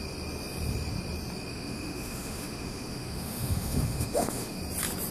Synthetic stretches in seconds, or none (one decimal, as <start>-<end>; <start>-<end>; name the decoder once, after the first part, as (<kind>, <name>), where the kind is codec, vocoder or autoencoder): 1.5-4.6 (autoencoder, DAC-VAE)